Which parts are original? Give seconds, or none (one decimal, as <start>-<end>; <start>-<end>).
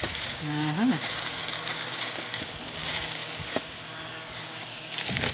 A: none